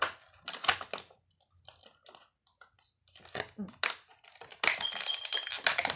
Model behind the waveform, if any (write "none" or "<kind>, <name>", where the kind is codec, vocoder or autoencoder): none